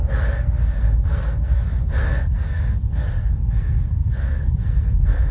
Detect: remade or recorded remade